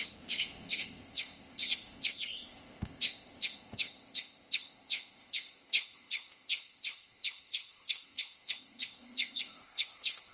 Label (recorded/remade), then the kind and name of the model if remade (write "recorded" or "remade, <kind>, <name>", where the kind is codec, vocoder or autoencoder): remade, codec, ZipCodec